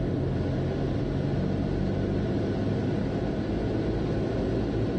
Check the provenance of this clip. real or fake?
real